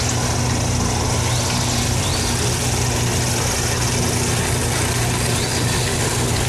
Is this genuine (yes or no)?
yes